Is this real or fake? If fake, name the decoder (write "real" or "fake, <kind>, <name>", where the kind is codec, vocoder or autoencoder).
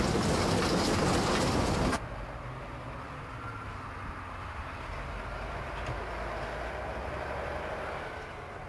real